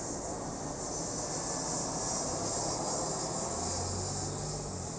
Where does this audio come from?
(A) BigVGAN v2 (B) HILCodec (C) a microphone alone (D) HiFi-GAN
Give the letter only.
C